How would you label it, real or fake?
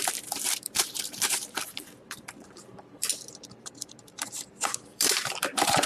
fake